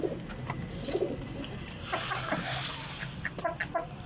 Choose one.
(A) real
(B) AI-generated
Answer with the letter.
A